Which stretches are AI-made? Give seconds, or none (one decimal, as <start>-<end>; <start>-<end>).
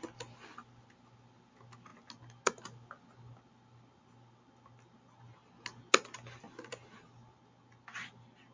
none